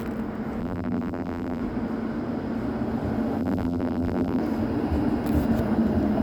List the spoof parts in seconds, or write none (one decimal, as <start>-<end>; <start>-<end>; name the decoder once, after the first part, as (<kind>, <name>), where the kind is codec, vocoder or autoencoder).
0.6-1.6 (vocoder, BigVGAN v2); 3.4-4.4